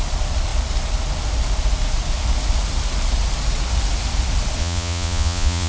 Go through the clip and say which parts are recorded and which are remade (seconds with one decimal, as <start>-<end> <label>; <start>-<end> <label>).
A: 0.0-4.6 recorded; 4.6-5.7 remade